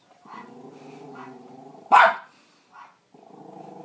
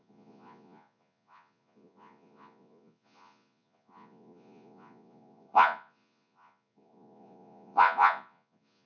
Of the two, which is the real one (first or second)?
first